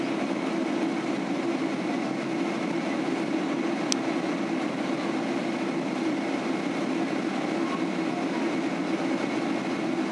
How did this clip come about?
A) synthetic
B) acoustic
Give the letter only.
B